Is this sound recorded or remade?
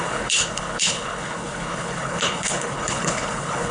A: remade